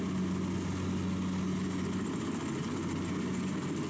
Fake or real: real